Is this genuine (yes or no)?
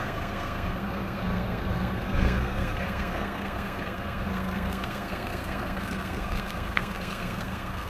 no